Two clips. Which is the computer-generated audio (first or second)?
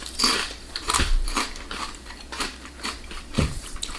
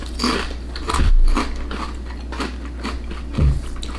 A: first